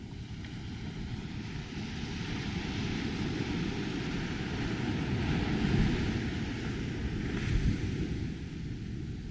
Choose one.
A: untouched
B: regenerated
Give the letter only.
A